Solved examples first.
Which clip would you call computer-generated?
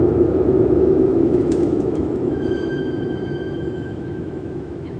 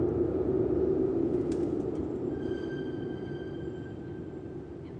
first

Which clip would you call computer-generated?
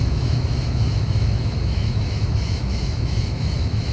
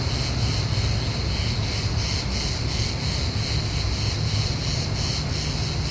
first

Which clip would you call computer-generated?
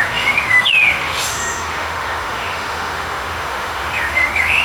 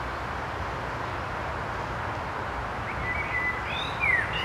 first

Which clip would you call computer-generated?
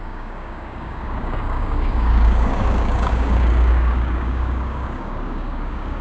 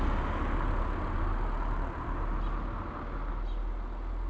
first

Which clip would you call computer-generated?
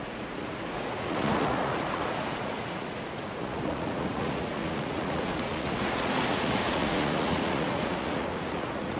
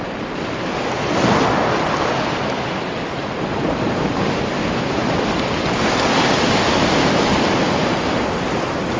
first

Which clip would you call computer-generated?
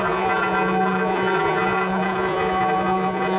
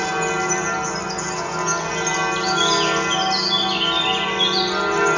first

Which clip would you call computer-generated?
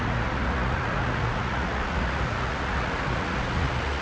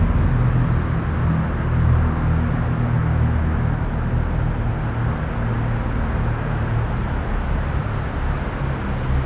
first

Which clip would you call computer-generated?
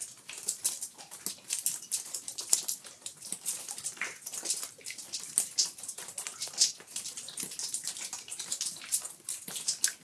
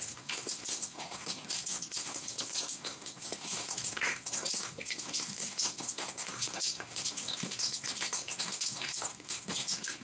second